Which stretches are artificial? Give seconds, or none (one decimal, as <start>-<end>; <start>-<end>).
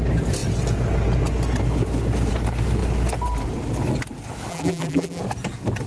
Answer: 4.5-5.2